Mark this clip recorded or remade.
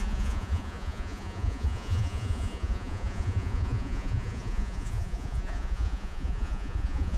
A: remade